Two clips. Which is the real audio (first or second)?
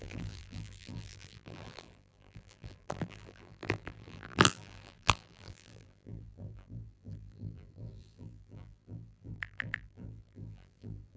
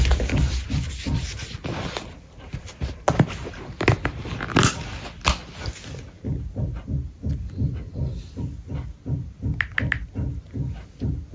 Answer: second